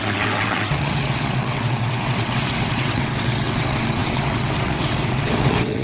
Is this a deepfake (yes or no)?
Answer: yes